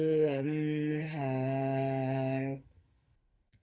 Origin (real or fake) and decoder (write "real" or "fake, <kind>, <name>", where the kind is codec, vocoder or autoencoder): fake, codec, SNAC